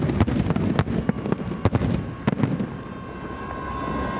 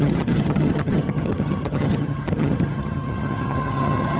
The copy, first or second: second